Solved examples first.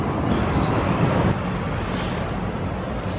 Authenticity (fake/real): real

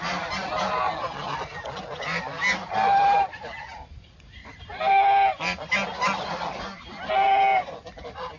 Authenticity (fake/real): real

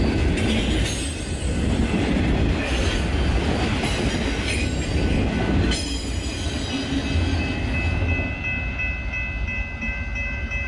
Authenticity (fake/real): real